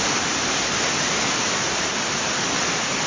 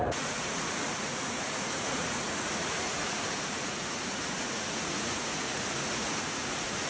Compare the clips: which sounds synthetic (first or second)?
second